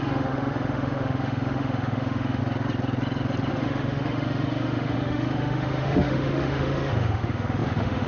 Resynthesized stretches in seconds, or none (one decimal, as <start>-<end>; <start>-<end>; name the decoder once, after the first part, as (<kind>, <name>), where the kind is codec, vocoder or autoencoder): 0.0-2.4 (autoencoder, DAC-VAE); 3.5-8.1